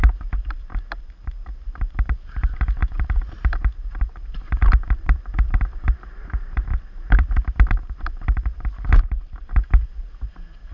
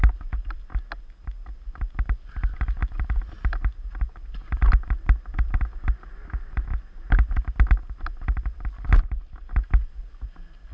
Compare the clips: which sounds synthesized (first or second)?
first